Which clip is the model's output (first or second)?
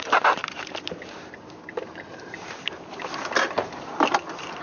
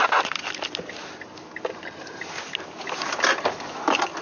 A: first